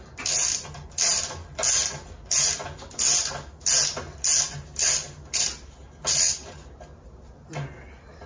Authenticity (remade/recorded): recorded